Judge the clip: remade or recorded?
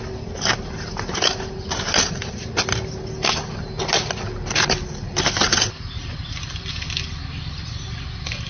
recorded